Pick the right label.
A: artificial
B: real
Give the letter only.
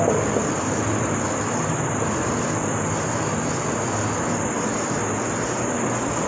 B